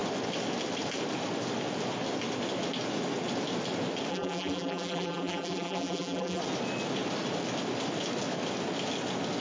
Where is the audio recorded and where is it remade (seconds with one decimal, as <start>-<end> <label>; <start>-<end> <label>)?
0.0-4.1 recorded; 4.1-6.4 remade; 6.4-9.4 recorded